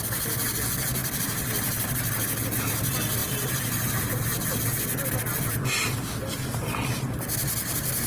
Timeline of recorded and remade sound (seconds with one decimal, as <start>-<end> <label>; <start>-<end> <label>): 0.0-8.1 recorded